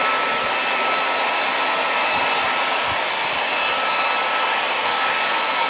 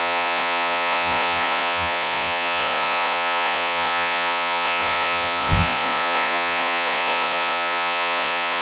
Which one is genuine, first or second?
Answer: first